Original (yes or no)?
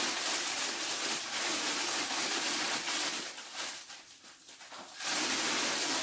yes